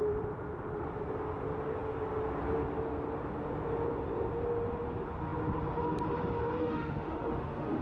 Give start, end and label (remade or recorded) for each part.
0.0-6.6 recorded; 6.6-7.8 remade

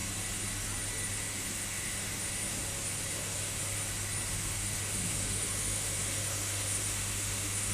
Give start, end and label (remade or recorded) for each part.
0.0-1.1 recorded; 1.1-2.6 remade; 2.6-3.1 recorded; 3.1-3.6 remade; 3.6-4.3 recorded; 4.3-7.7 remade